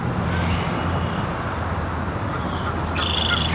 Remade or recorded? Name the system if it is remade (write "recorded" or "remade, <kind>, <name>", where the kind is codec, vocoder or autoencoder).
recorded